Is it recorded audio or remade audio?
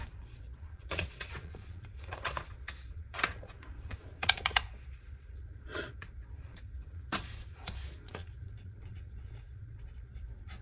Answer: remade